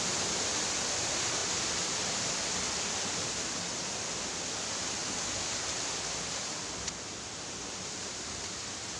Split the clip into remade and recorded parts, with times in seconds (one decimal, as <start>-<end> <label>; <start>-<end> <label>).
0.0-9.0 recorded